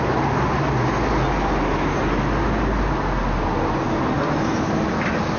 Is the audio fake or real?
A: real